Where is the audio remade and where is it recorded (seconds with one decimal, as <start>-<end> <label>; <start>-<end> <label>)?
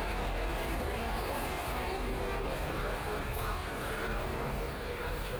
0.0-5.4 remade